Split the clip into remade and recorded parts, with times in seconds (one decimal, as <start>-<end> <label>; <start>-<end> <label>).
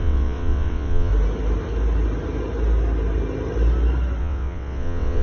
0.0-1.1 remade; 1.1-4.2 recorded; 4.2-5.2 remade